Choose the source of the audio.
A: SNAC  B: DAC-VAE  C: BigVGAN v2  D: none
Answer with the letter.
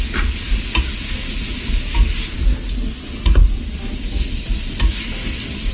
D